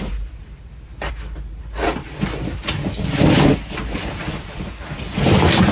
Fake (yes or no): no